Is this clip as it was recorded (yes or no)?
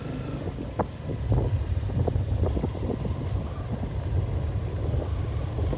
yes